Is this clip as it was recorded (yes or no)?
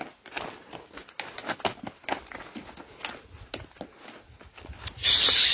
yes